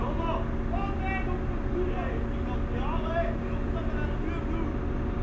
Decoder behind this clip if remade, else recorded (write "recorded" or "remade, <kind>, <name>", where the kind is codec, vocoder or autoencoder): recorded